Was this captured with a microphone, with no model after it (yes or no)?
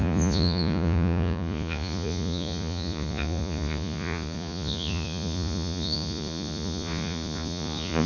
no